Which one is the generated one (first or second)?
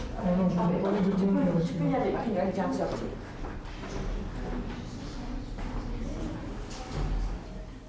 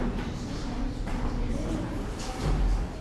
second